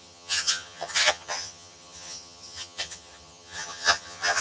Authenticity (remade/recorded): remade